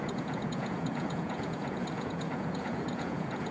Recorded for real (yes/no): no